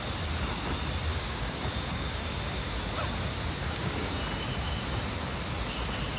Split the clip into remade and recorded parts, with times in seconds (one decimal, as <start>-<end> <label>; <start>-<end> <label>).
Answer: 0.0-1.1 recorded; 1.1-2.4 remade; 2.4-3.6 recorded; 3.6-4.2 remade; 4.2-6.2 recorded